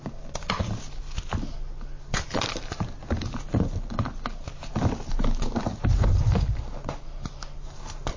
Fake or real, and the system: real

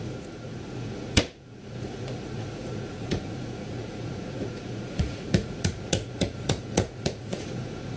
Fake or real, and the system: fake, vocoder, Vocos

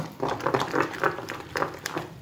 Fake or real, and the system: real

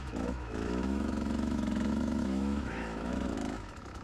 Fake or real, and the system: fake, autoencoder, DAC-VAE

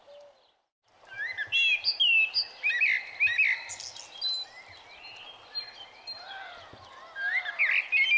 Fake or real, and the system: real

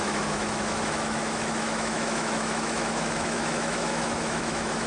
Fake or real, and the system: fake, autoencoder, DAC-VAE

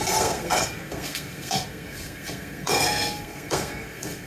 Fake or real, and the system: fake, codec, SNAC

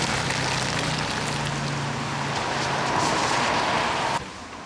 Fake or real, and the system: real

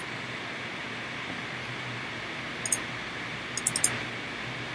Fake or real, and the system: real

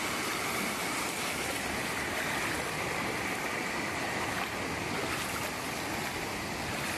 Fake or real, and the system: real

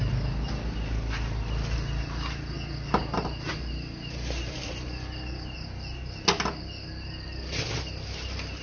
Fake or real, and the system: real